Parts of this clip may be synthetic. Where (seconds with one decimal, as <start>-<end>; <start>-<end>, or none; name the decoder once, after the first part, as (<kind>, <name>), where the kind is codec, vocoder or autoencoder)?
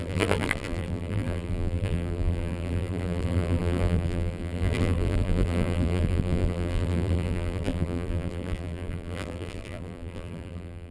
0.0-10.9 (vocoder, BigVGAN v2)